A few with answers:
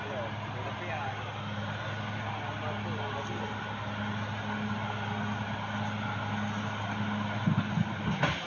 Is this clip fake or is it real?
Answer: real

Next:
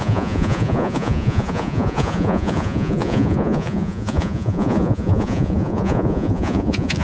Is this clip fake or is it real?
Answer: fake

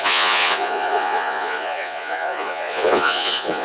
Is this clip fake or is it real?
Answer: fake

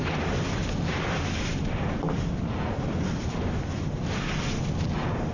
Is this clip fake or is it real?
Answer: real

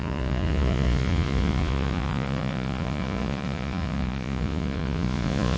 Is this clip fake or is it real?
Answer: fake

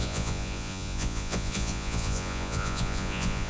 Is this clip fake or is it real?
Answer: fake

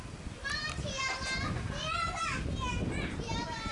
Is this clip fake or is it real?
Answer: real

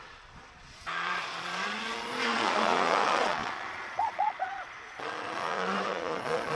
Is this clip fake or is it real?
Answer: fake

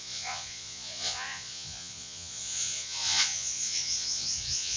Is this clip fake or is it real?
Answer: fake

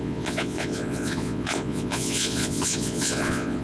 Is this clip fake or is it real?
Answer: fake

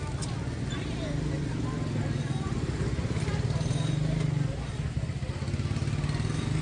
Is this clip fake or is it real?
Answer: real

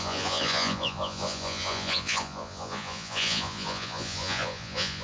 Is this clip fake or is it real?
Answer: fake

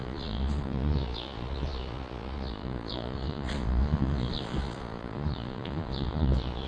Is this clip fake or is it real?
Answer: fake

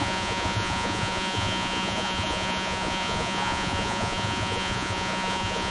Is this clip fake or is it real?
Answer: fake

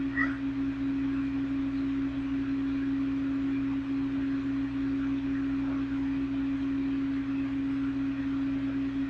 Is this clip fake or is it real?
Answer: real